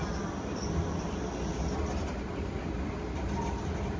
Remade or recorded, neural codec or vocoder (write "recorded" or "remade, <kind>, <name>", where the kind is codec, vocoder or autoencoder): recorded